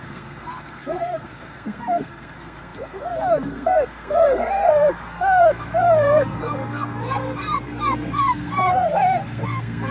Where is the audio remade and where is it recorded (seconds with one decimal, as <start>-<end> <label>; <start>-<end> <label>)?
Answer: 0.0-9.9 remade